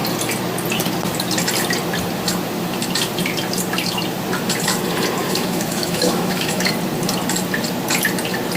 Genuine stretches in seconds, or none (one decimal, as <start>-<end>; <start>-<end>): 0.0-5.2; 6.7-8.6